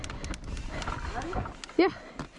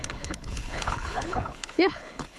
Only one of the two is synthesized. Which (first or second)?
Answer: second